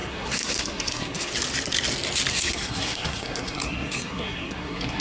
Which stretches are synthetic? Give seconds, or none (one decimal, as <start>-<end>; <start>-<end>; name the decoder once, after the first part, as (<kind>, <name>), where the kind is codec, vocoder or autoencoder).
0.0-1.3 (codec, SNAC); 2.3-5.0